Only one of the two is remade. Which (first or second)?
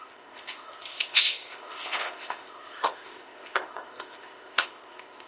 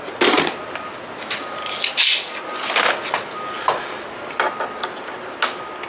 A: first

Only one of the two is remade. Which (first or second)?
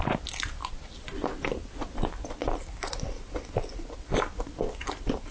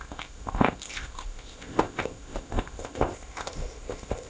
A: second